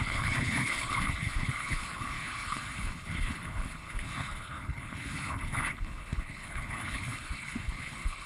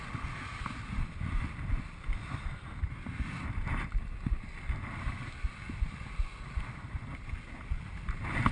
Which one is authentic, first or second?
second